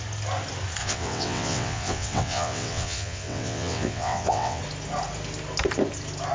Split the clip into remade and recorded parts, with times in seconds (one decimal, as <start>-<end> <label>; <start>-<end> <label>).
0.0-0.8 recorded; 0.8-4.6 remade; 4.6-6.3 recorded